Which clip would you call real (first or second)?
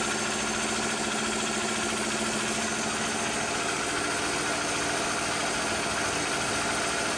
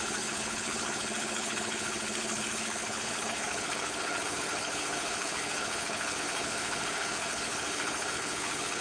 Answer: first